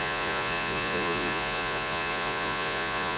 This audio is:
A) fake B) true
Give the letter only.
A